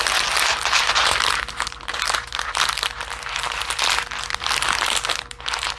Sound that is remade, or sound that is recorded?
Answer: recorded